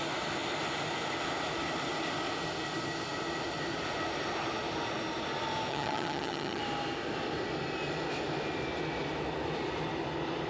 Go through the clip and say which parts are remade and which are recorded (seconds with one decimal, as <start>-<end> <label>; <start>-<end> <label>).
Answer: 0.0-5.7 recorded; 5.7-6.6 remade; 6.6-10.5 recorded